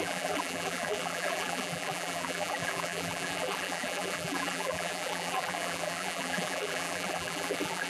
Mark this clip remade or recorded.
remade